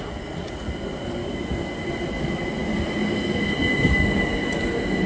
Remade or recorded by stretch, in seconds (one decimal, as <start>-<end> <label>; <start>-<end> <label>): 0.0-1.2 recorded; 1.2-1.7 remade; 1.7-5.1 recorded